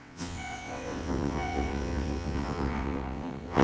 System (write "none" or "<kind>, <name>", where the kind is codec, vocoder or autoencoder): vocoder, WaveNeXt